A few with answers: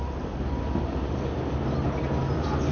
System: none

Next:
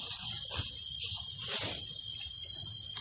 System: none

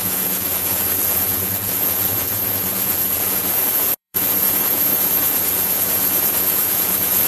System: vocoder, Vocos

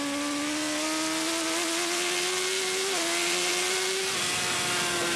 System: none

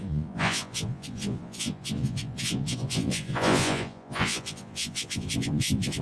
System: vocoder, Vocos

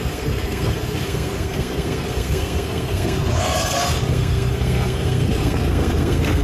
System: codec, SNAC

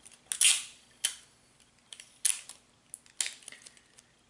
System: none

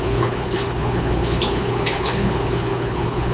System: codec, HILCodec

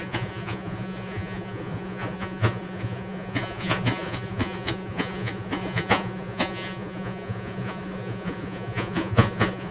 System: vocoder, Vocos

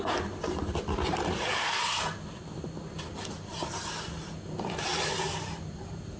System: none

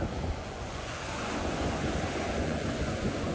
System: vocoder, Vocos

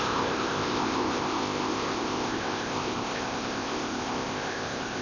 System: codec, ZipCodec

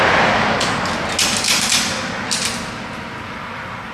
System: none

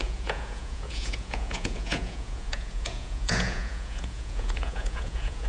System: vocoder, Vocos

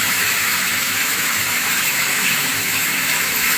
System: autoencoder, DAC-VAE